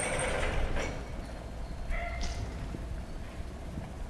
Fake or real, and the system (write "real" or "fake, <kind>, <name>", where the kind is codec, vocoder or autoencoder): real